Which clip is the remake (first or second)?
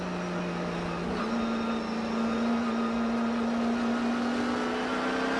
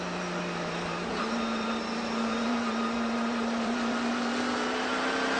second